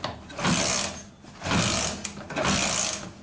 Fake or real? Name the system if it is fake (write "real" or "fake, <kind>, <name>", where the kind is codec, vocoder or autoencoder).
real